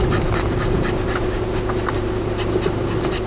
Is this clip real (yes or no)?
yes